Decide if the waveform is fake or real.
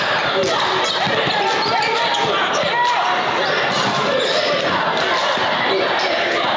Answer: real